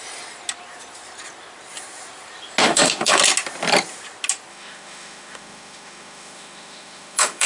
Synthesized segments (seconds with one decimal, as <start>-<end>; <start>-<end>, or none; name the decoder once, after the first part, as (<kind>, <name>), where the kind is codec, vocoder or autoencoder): 2.6-3.2 (autoencoder, DAC-VAE); 4.5-7.5